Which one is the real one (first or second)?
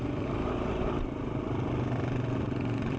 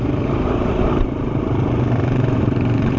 first